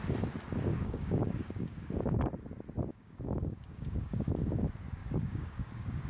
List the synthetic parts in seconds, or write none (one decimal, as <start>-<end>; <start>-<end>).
0.7-2.2; 2.9-4.3; 5.0-6.1